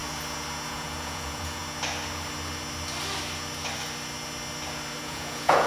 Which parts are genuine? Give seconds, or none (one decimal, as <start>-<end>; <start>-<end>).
0.0-0.7; 1.6-5.0